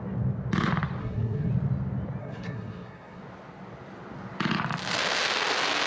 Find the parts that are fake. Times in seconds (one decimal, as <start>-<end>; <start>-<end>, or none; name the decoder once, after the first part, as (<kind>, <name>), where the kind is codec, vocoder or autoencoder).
1.0-1.5 (codec, SNAC); 2.2-3.2